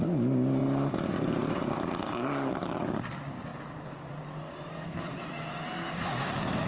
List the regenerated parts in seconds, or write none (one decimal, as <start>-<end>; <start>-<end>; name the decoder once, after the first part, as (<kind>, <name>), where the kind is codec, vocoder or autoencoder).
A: none